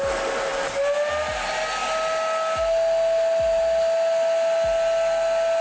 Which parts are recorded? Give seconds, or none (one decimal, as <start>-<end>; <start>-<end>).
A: 0.0-5.6